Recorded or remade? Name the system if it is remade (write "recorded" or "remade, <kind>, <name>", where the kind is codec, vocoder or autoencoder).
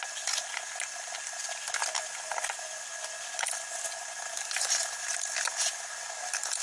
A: recorded